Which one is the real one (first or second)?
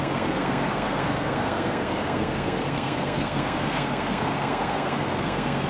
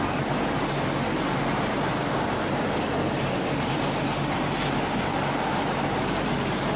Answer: second